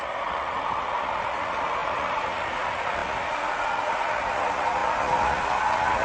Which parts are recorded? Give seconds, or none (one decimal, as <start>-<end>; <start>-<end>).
none